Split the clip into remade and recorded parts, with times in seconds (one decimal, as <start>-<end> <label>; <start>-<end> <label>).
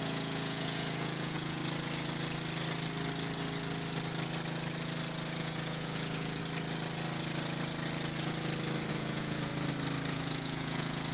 0.0-1.6 remade; 1.6-5.4 recorded; 5.4-6.4 remade; 6.4-8.9 recorded; 8.9-9.5 remade; 9.5-10.1 recorded; 10.1-11.1 remade